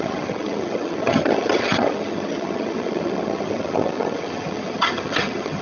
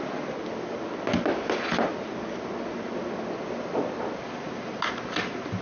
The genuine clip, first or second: second